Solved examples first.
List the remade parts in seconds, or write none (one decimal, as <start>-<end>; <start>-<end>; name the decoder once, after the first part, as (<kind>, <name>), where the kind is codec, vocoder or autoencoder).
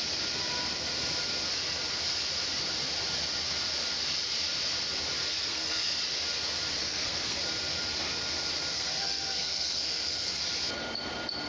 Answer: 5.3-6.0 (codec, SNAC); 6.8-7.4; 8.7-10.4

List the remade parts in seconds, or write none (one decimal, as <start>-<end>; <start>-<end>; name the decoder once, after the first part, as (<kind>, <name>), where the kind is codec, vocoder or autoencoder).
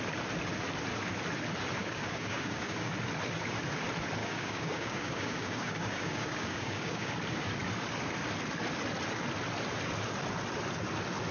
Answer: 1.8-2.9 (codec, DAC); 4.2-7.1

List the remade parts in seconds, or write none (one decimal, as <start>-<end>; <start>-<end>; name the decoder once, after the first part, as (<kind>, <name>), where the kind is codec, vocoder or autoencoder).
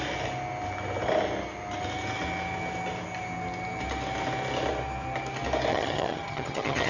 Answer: 5.7-6.9 (vocoder, HiFi-GAN)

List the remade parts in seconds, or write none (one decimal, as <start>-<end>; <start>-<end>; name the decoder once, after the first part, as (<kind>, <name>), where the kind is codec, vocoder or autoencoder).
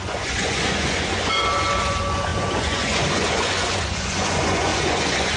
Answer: 0.0-5.4 (vocoder, Vocos)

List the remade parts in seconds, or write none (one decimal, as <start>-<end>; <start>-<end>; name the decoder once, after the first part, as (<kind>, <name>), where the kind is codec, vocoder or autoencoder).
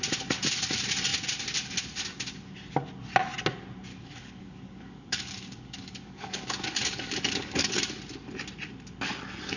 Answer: 3.9-7.9 (codec, DAC)